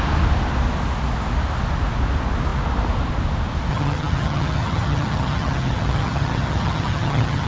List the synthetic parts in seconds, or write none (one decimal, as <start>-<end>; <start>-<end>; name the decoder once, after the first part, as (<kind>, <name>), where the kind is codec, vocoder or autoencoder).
3.7-7.5 (vocoder, HiFi-GAN)